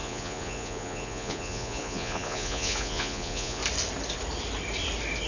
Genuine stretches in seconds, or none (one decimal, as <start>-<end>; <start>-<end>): 3.6-5.3